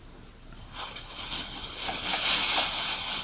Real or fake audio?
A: real